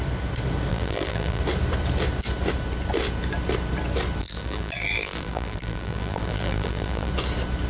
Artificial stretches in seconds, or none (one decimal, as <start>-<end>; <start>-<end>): 0.7-1.4; 4.2-7.1